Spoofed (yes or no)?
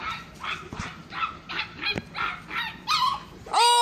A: no